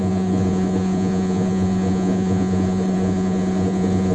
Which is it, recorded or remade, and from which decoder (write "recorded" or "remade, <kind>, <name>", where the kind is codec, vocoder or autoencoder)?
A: remade, vocoder, Vocos